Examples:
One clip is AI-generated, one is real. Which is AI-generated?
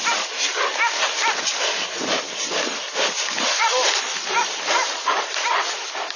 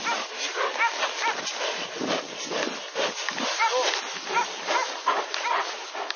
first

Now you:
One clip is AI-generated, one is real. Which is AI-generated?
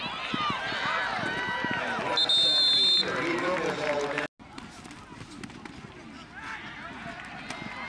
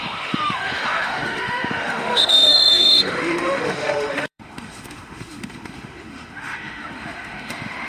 second